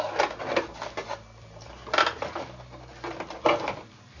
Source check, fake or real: real